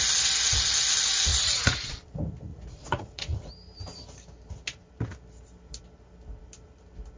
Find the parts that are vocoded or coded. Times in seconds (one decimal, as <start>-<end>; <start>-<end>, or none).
1.3-1.9; 2.5-3.5